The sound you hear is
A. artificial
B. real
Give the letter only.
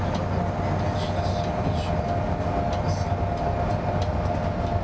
B